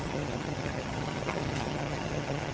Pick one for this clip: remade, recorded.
remade